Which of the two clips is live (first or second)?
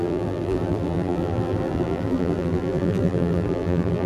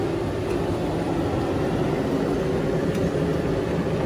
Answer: second